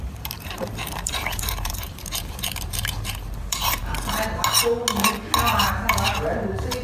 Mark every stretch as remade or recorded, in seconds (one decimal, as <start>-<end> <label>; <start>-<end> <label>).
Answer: 0.0-3.8 remade; 3.8-5.5 recorded; 5.5-6.8 remade